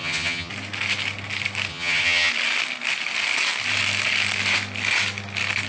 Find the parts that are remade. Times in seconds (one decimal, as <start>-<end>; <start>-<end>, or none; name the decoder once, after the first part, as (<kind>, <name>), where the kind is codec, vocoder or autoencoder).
0.0-0.5 (vocoder, HiFi-GAN); 1.7-2.3